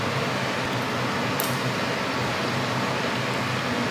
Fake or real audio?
real